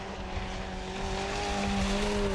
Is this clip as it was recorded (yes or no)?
yes